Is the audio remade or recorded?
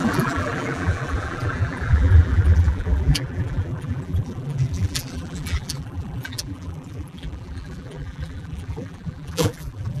remade